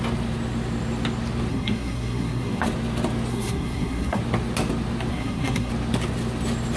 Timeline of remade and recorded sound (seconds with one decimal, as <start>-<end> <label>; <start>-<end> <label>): 0.0-1.5 recorded; 1.5-2.6 remade; 2.6-3.3 recorded; 3.3-4.2 remade; 4.2-5.1 recorded; 5.1-5.7 remade; 5.7-6.8 recorded